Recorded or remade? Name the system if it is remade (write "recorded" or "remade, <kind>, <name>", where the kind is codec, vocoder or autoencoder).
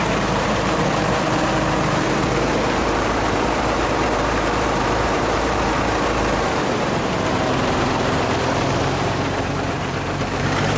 remade, vocoder, BigVGAN v2